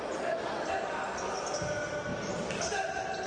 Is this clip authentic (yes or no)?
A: yes